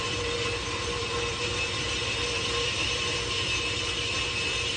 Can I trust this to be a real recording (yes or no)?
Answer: no